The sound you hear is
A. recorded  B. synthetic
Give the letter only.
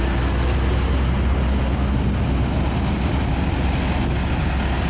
A